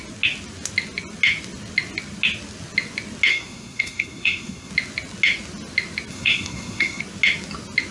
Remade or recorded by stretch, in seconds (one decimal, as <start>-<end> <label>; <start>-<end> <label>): 0.0-3.3 recorded; 3.3-4.7 remade; 4.7-6.1 recorded; 6.1-7.0 remade; 7.0-7.9 recorded